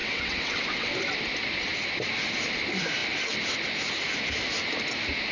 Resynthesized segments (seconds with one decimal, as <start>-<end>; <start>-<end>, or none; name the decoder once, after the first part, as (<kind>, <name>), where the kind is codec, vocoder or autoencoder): 0.0-0.9 (vocoder, WaveNeXt)